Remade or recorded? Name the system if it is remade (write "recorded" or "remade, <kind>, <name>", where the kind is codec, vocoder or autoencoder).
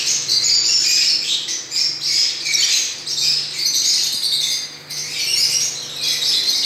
recorded